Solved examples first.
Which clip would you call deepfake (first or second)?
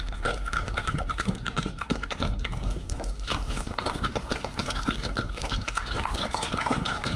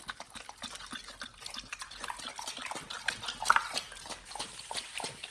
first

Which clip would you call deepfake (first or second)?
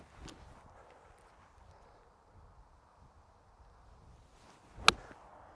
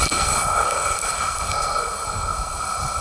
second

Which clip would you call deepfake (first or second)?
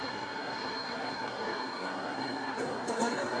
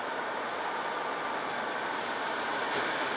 first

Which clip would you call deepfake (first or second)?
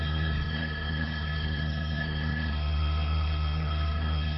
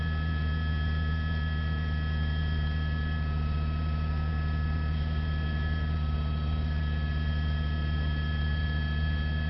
first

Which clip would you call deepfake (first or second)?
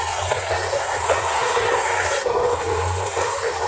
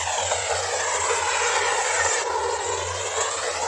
first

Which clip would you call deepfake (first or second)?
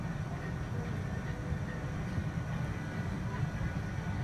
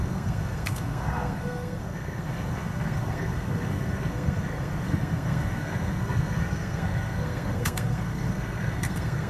second